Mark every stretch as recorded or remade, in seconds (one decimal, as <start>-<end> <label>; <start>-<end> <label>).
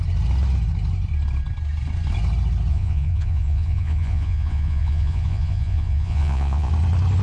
0.0-2.7 recorded; 2.7-6.7 remade; 6.7-7.2 recorded